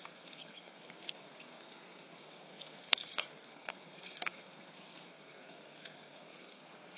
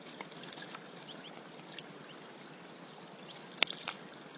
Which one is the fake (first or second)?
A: first